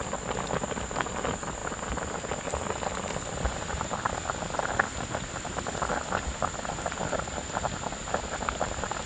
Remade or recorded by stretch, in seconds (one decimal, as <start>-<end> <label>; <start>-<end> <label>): 0.0-9.1 recorded

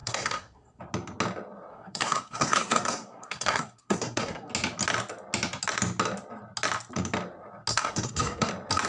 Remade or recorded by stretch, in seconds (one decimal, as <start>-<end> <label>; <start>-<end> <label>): 0.0-0.8 remade; 0.8-1.7 recorded; 1.7-4.5 remade; 4.5-7.7 recorded; 7.7-8.5 remade; 8.5-8.9 recorded

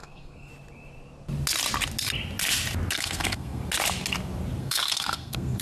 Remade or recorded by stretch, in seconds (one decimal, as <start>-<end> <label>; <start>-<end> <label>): 0.0-0.5 remade; 0.5-2.9 recorded; 2.9-3.6 remade; 3.6-4.6 recorded; 4.6-5.6 remade

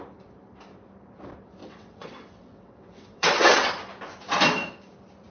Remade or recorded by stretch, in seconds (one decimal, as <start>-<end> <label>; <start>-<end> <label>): 0.0-1.6 recorded; 1.6-3.7 remade; 3.7-5.3 recorded

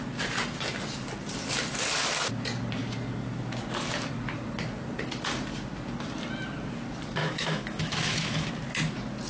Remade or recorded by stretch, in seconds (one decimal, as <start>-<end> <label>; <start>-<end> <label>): 0.0-7.2 recorded; 7.2-8.5 remade; 8.5-9.3 recorded

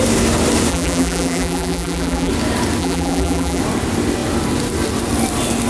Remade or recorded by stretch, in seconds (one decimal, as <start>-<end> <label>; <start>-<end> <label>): 0.0-0.7 recorded; 0.7-2.3 remade; 2.3-2.8 recorded; 2.8-3.6 remade; 3.6-5.7 recorded

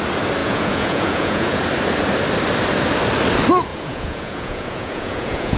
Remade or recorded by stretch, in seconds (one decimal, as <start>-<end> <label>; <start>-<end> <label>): 0.0-0.4 recorded; 0.4-1.6 remade; 1.6-3.7 recorded; 3.7-5.6 remade